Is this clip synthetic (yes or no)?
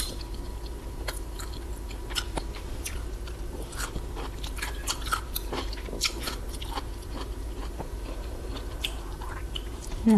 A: yes